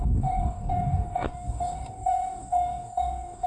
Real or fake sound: fake